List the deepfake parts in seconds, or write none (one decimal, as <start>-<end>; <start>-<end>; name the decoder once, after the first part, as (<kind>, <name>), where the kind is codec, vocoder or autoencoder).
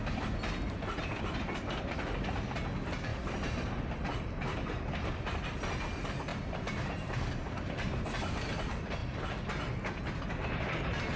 3.1-3.8 (vocoder, BigVGAN v2); 6.3-8.6